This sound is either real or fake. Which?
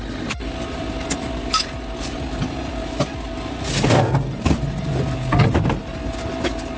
real